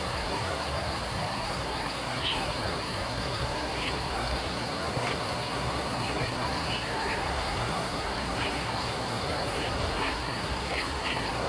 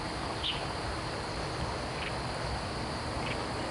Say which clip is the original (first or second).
second